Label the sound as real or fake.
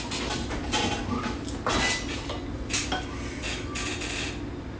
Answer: real